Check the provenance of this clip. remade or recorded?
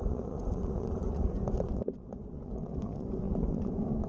remade